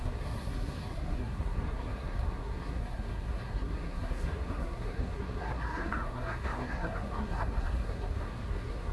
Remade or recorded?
remade